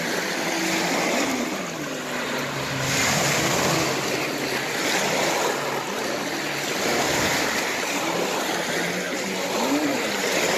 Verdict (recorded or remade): recorded